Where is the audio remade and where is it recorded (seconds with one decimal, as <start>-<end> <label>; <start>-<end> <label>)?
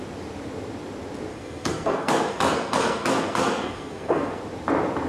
0.0-1.3 recorded; 1.3-4.4 remade; 4.4-5.1 recorded